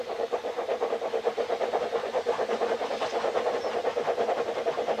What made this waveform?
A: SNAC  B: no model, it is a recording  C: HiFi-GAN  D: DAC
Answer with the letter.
B